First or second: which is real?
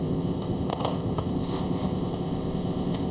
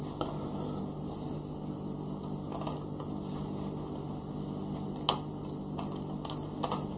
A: second